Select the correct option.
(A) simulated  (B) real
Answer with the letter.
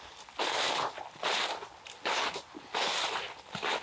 B